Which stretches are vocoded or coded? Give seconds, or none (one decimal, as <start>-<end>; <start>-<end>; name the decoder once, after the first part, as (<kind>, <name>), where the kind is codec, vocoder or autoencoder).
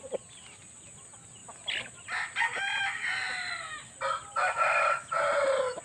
none